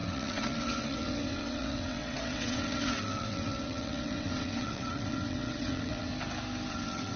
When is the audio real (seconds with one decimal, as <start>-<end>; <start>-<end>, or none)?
6.1-6.7